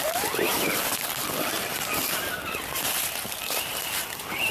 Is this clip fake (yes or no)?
no